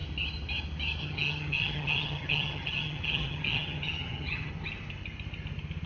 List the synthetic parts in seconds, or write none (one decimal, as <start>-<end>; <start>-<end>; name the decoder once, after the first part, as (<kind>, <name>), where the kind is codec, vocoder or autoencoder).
1.0-4.5 (vocoder, HiFi-GAN)